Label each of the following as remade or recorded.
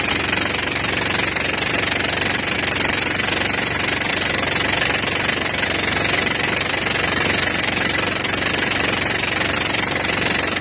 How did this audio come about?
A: recorded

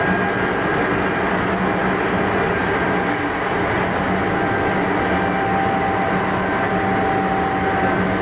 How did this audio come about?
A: recorded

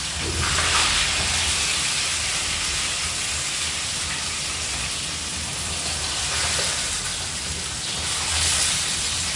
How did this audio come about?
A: recorded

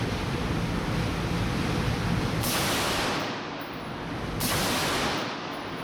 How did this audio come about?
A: recorded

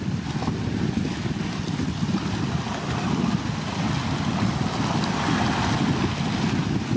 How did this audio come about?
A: recorded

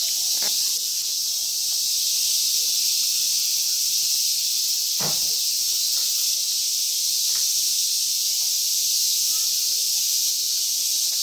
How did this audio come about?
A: recorded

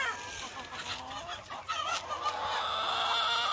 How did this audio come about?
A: recorded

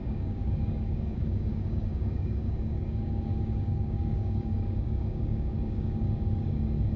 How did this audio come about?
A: remade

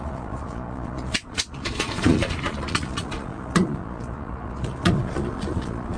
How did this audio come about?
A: remade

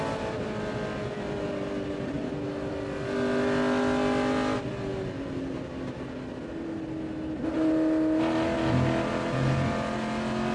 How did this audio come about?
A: recorded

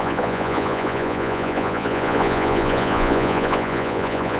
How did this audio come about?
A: remade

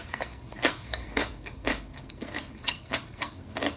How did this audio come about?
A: remade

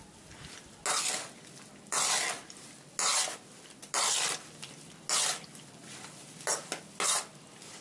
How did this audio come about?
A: recorded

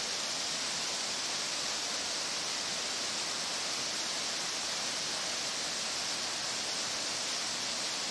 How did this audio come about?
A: recorded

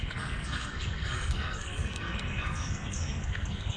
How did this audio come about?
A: remade